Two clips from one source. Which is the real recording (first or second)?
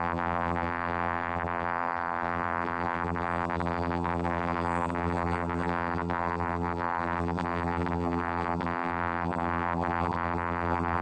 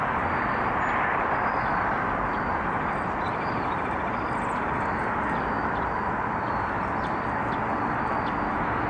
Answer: second